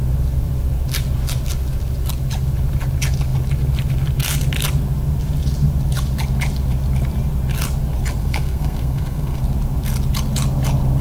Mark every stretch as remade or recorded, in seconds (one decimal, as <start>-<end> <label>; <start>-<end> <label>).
0.0-8.2 recorded; 8.2-9.4 remade; 9.4-11.0 recorded